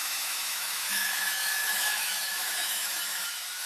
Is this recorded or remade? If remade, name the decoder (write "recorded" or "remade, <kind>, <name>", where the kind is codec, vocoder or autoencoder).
remade, autoencoder, DAC-VAE